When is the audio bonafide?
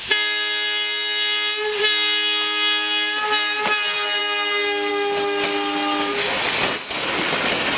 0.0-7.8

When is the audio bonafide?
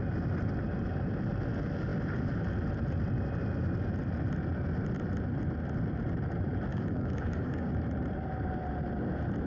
0.0-6.7; 7.7-9.5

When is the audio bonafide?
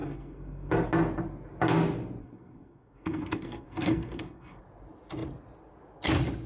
0.7-2.2; 4.6-6.5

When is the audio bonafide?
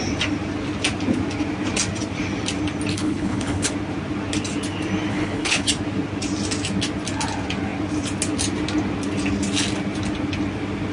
0.0-2.9; 3.7-5.1; 5.7-10.9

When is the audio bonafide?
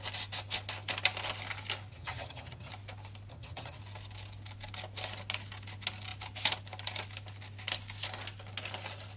0.0-1.9; 2.7-3.3; 3.8-9.2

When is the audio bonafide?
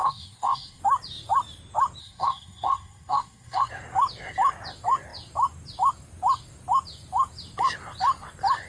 0.8-2.0; 3.7-8.7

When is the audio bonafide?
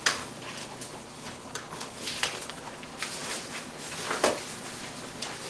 0.0-0.6; 2.6-5.5